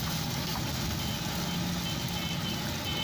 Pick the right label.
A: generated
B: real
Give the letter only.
B